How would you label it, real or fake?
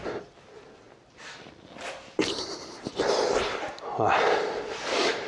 fake